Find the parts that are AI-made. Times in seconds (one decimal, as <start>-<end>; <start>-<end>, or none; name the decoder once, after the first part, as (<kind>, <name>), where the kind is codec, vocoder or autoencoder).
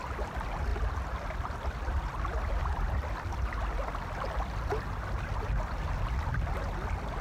none